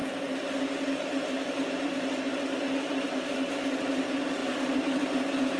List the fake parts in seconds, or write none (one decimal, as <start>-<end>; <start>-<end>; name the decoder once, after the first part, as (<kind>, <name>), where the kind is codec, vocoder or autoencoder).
0.0-1.9 (vocoder, BigVGAN v2); 2.3-3.8; 4.4-5.6

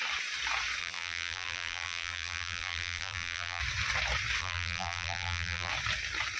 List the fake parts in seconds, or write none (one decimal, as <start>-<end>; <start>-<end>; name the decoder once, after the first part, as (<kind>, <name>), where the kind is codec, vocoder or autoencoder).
0.8-3.6 (vocoder, BigVGAN v2); 4.4-5.7

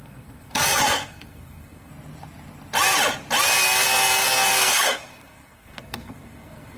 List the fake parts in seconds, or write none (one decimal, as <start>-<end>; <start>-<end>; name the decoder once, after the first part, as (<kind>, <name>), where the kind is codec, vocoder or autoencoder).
0.0-1.9 (codec, SNAC); 4.5-6.8

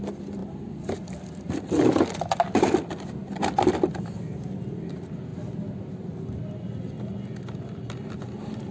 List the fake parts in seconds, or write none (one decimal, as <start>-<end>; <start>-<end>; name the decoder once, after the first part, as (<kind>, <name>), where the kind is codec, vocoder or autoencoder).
0.4-1.6 (vocoder, BigVGAN v2)

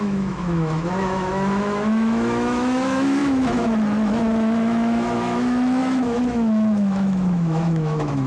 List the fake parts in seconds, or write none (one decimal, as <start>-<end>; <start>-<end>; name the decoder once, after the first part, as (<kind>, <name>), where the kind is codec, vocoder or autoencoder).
0.0-8.3 (autoencoder, DAC-VAE)

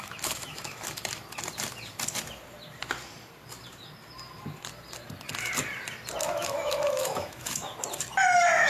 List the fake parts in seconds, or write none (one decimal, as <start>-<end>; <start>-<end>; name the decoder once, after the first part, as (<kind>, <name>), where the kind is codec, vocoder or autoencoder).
0.0-1.0 (autoencoder, DAC-VAE); 6.2-7.7